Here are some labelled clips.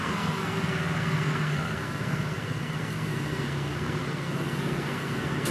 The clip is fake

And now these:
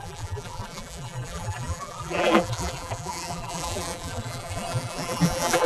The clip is fake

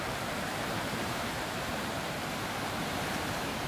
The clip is fake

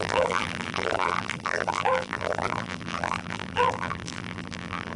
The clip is fake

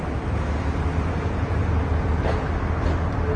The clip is real